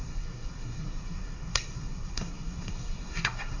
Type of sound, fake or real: fake